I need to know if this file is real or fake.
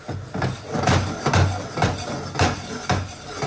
real